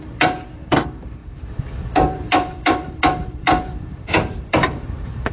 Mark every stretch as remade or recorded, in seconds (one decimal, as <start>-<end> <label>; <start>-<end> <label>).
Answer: 0.0-5.3 remade